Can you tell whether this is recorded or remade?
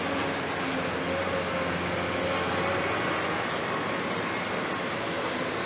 recorded